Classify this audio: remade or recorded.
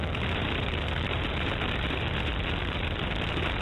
remade